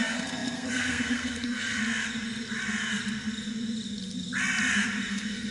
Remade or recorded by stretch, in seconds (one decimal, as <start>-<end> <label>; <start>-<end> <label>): 0.0-1.8 remade; 1.8-5.1 recorded; 5.1-5.5 remade